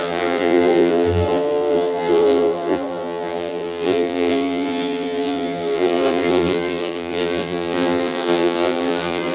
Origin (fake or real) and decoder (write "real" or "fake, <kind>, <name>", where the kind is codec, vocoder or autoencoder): fake, vocoder, BigVGAN v2